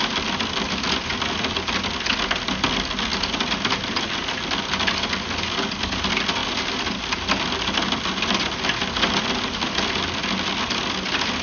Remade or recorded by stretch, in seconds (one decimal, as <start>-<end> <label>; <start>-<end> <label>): 0.0-11.4 recorded